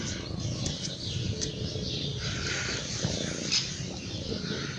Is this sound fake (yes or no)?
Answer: no